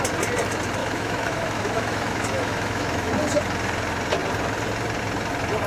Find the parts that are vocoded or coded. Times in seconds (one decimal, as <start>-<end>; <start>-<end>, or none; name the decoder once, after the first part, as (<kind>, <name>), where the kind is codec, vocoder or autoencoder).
0.8-3.1 (autoencoder, DAC-VAE)